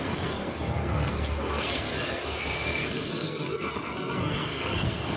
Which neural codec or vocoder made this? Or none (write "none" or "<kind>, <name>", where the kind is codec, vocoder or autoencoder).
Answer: codec, SNAC